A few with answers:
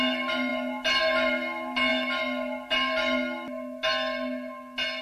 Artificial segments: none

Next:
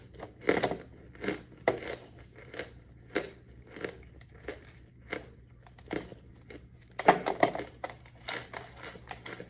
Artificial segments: none

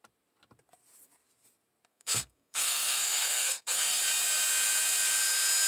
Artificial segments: 1.9-4.0 (codec, SNAC)

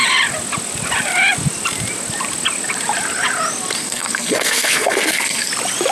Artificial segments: 3.8-5.5 (codec, SNAC)

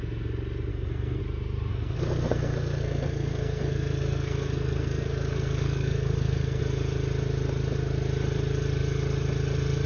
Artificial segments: 0.7-1.2 (codec, SNAC); 1.7-6.6

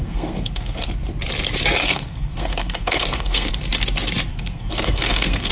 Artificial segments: 0.0-0.9 (codec, SNAC); 1.8-3.5; 4.3-5.5

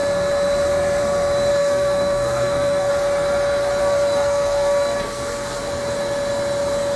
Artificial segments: 1.5-2.9 (codec, SNAC); 3.8-5.6